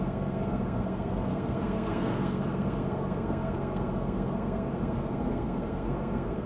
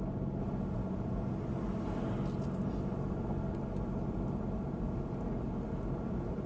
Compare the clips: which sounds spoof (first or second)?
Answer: first